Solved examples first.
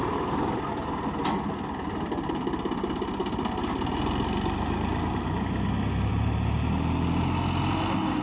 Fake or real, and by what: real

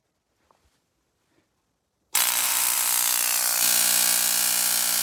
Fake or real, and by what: fake, vocoder, BigVGAN v2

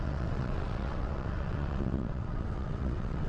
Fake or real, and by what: fake, vocoder, WaveNeXt